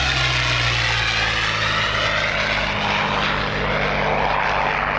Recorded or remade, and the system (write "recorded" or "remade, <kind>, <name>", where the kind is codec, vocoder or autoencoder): recorded